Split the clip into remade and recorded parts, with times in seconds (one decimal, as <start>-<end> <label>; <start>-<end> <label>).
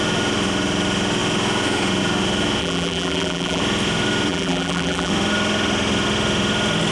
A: 0.0-2.6 recorded; 2.6-3.6 remade; 3.6-4.3 recorded; 4.3-5.1 remade; 5.1-6.9 recorded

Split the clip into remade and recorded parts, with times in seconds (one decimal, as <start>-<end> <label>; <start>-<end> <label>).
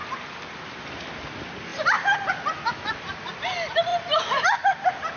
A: 0.0-0.9 remade; 0.9-1.7 recorded; 1.7-2.3 remade; 2.3-3.9 recorded; 3.9-5.2 remade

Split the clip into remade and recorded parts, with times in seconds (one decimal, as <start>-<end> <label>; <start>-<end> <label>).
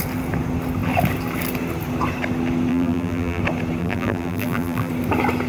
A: 0.0-2.7 recorded; 2.7-3.4 remade; 3.4-3.8 recorded; 3.8-4.9 remade; 4.9-5.5 recorded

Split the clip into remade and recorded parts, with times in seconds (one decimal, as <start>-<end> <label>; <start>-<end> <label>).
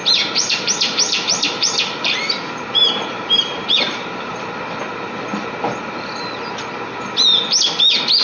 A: 0.0-4.5 remade; 4.5-8.2 recorded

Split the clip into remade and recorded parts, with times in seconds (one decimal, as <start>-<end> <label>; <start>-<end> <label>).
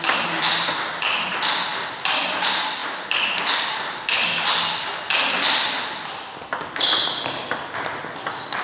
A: 0.0-2.8 recorded; 2.8-3.4 remade; 3.4-8.6 recorded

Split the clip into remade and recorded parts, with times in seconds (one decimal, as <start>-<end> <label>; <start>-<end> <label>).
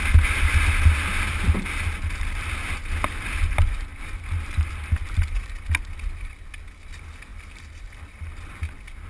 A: 0.0-3.9 recorded; 3.9-4.7 remade; 4.7-9.1 recorded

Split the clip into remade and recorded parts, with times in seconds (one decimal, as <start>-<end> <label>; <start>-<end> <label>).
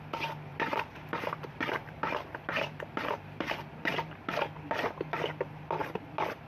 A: 0.0-0.5 recorded; 0.5-4.4 remade; 4.4-6.5 recorded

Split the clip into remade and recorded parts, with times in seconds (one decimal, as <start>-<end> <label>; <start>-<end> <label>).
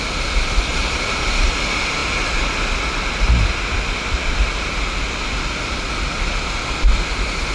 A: 0.0-0.7 recorded; 0.7-1.5 remade; 1.5-7.5 recorded